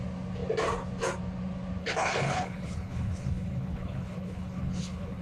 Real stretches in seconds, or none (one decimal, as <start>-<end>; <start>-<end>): 0.0-1.8